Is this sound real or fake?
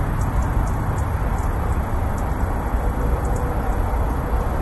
real